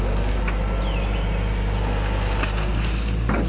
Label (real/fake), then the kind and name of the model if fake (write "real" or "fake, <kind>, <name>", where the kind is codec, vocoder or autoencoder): real